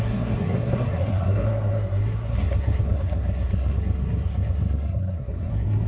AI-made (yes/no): yes